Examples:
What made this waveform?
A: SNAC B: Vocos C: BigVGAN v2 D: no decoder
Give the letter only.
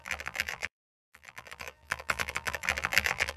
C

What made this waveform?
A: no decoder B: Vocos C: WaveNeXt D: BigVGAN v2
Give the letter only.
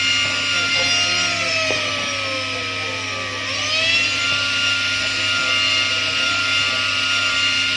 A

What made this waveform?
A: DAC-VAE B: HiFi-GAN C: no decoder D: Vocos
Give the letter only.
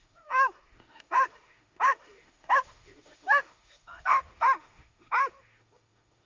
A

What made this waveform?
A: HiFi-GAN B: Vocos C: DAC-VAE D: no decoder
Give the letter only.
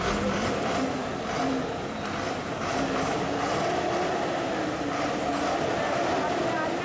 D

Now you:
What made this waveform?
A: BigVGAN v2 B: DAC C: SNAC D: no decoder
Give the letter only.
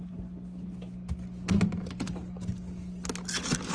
D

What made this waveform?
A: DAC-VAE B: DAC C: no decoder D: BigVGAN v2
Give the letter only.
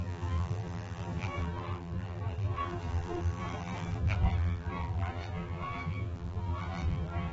D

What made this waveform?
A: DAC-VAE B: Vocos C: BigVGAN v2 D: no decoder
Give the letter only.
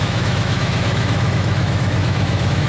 A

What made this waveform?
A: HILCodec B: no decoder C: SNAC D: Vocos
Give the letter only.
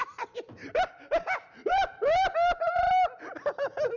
B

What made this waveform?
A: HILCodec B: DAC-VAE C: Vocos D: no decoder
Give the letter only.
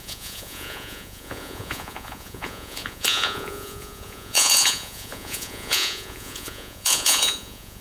C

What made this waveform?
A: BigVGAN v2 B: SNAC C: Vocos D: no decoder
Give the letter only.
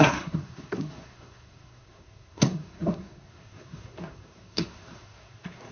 B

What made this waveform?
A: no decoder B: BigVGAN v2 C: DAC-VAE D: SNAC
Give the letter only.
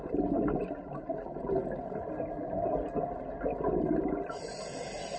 A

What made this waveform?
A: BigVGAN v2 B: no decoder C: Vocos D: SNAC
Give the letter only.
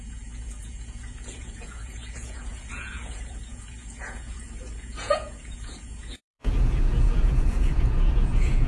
C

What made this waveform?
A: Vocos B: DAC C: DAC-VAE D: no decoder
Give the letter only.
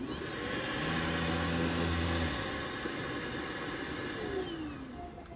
D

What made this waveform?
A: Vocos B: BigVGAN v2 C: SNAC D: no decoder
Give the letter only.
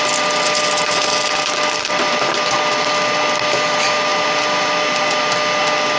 D